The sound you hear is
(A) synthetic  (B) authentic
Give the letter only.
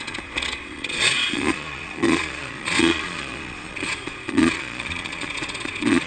A